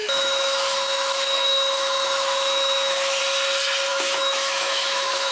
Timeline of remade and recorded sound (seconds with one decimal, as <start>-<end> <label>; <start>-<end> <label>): 0.0-3.2 remade; 3.2-3.9 recorded; 3.9-5.3 remade